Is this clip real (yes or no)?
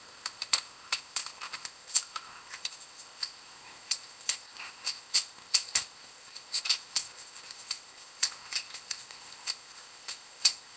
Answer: no